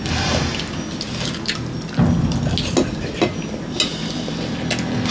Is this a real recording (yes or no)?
yes